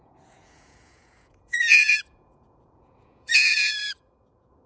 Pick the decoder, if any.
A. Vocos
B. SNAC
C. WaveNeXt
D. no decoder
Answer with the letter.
A